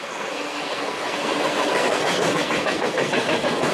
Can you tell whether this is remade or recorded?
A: remade